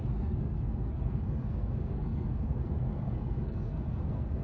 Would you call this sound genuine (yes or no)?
no